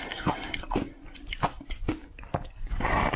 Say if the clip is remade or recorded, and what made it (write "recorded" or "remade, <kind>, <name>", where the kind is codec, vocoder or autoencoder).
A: remade, vocoder, BigVGAN v2